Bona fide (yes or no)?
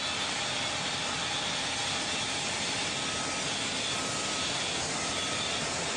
yes